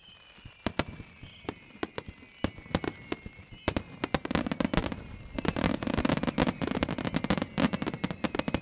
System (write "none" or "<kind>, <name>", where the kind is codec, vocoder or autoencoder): none